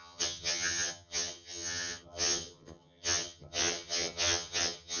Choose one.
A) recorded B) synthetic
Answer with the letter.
B